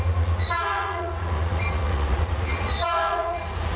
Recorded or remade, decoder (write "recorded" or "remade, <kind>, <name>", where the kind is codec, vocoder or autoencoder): remade, vocoder, Vocos